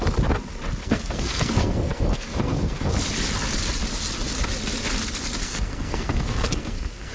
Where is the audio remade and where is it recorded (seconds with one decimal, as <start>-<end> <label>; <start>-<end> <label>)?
0.0-0.8 recorded; 0.8-2.9 remade; 2.9-5.4 recorded; 5.4-7.1 remade